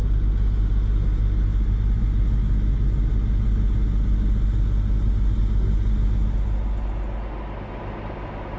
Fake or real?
real